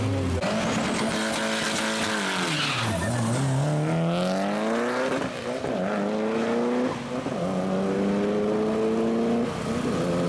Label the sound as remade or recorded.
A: recorded